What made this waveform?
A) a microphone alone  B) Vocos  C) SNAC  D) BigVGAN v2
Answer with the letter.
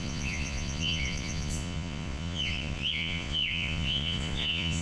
B